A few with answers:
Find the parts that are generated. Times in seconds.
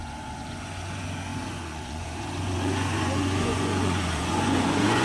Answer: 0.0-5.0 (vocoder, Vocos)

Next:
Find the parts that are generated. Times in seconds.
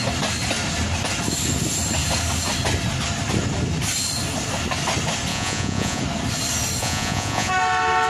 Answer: 5.3-6.0 (vocoder, Vocos); 6.8-7.5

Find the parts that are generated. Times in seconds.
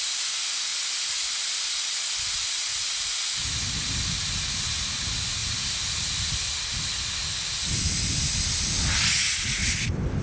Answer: none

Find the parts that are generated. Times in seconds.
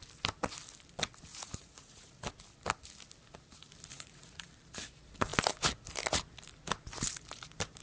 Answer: 1.3-2.1 (vocoder, Vocos); 3.9-4.5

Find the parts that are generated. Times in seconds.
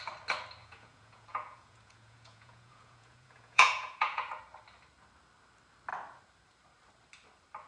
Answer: 0.6-4.4 (vocoder, Vocos)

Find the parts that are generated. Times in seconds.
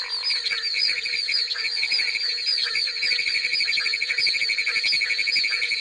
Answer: 0.8-2.1 (vocoder, Vocos); 2.5-4.4